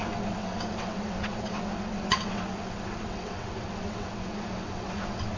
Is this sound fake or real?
fake